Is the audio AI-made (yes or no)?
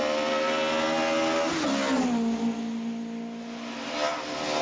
no